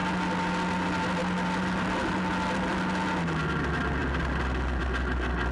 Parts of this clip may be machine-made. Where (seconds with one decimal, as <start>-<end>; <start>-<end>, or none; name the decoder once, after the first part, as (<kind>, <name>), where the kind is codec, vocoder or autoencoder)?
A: none